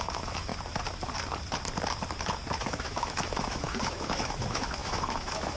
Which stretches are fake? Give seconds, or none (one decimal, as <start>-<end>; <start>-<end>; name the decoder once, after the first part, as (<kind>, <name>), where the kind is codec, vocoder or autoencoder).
0.0-0.5 (autoencoder, DAC-VAE); 2.6-5.6